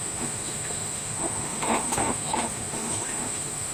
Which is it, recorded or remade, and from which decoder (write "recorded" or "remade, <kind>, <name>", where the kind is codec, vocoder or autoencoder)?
remade, autoencoder, DAC-VAE